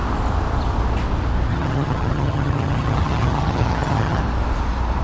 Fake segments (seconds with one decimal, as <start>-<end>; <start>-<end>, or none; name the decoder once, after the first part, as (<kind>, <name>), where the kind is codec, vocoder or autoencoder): 1.5-4.2 (vocoder, HiFi-GAN)